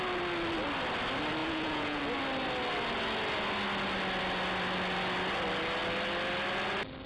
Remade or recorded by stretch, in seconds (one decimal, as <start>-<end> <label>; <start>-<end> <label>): 0.0-1.4 recorded; 1.4-2.0 remade; 2.0-7.1 recorded